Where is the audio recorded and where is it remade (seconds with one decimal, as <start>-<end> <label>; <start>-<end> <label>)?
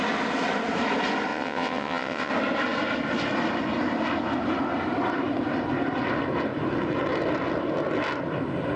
0.0-1.3 recorded; 1.3-2.3 remade; 2.3-8.8 recorded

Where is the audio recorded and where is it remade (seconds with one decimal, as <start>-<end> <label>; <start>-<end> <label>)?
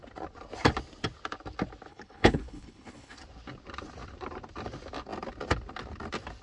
0.0-1.9 recorded; 1.9-3.2 remade; 3.2-6.4 recorded